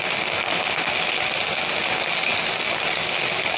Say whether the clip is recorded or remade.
recorded